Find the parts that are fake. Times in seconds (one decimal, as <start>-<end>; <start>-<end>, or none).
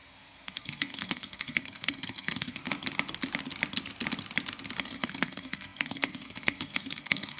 0.0-2.6; 4.8-7.4